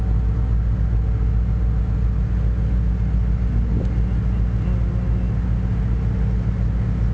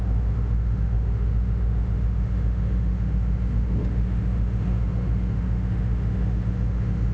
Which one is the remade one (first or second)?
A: second